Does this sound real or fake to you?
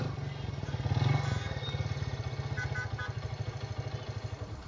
real